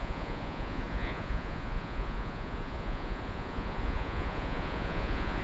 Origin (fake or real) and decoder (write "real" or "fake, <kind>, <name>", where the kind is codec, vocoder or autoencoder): fake, vocoder, Vocos